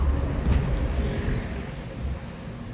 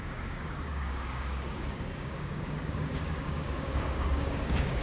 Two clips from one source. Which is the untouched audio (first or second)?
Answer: first